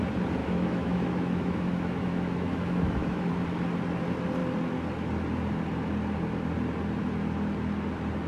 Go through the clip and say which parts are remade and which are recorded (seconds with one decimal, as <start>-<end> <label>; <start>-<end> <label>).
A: 0.0-0.4 recorded; 0.4-3.3 remade; 3.3-8.3 recorded